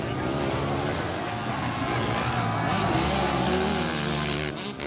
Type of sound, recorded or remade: recorded